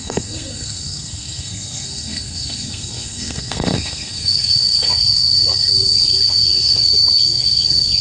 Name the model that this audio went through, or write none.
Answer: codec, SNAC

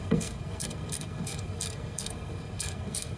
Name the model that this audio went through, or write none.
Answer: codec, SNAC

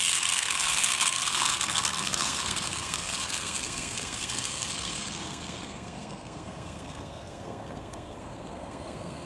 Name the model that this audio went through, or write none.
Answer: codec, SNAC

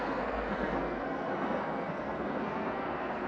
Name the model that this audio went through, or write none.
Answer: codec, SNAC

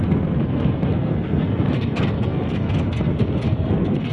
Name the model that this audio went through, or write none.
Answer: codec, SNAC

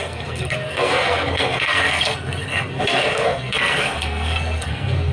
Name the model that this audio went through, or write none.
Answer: codec, SNAC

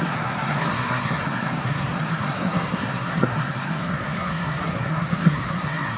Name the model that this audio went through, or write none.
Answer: codec, SNAC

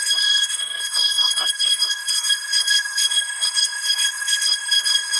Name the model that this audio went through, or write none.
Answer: codec, SNAC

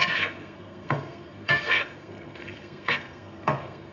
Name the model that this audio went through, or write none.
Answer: codec, SNAC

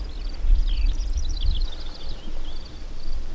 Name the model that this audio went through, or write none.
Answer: none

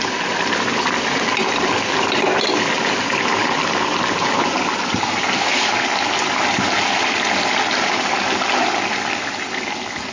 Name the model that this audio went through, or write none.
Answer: none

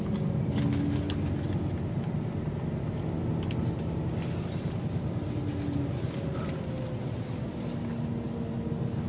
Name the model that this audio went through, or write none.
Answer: none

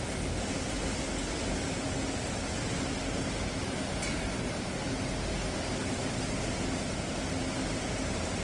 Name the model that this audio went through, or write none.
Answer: none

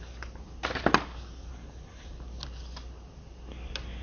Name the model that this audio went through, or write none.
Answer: none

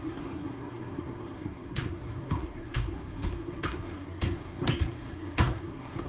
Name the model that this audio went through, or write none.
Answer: codec, SNAC